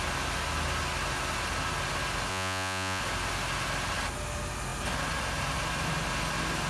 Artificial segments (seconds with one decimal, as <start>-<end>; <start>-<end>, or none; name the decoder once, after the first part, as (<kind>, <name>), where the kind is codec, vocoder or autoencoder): 2.3-3.0 (vocoder, Vocos)

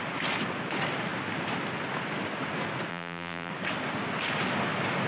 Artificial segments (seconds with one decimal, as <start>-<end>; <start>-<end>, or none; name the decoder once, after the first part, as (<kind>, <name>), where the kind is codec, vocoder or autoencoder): 2.9-3.5 (vocoder, BigVGAN v2)

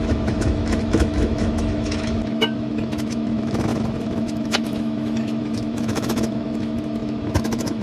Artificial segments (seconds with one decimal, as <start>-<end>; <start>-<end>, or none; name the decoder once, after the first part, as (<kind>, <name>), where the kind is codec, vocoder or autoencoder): 0.0-7.8 (autoencoder, DAC-VAE)

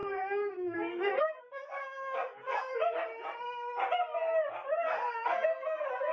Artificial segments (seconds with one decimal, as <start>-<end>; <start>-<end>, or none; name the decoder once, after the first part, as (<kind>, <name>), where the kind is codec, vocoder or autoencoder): 0.0-2.7 (codec, SNAC); 4.7-6.1